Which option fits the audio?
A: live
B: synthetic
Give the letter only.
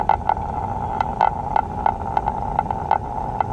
A